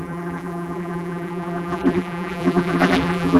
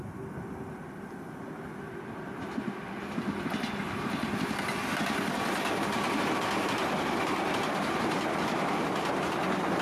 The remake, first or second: first